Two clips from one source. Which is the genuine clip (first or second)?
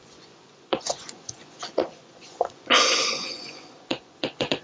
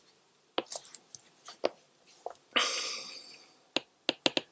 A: second